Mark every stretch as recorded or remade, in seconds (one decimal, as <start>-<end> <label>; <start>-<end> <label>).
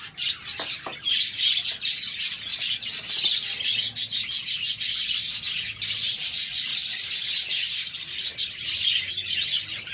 0.0-9.9 recorded